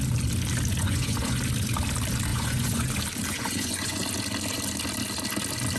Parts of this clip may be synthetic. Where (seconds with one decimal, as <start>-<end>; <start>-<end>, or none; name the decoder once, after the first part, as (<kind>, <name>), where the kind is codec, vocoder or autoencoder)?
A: 0.8-1.4 (vocoder, Vocos); 2.3-2.9; 3.3-4.0